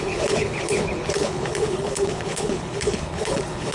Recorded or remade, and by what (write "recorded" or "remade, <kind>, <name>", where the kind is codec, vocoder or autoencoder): remade, codec, HILCodec